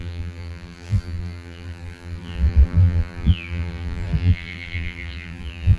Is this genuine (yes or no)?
no